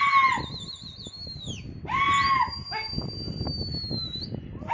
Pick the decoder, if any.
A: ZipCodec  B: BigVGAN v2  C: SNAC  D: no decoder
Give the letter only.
D